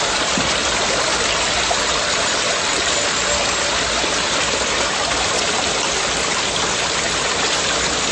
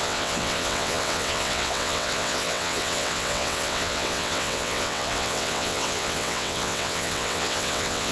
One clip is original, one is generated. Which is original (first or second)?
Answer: first